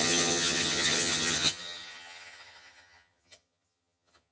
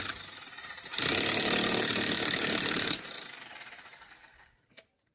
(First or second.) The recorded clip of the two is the second